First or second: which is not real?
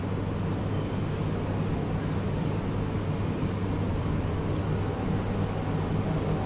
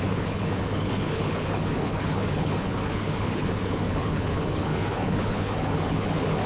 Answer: second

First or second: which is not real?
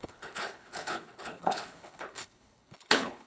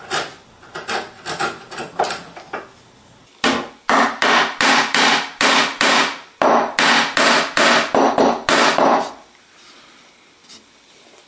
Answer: first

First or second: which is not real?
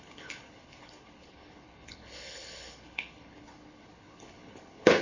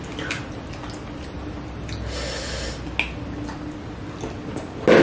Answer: first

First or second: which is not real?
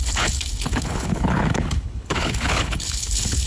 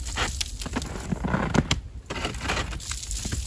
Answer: first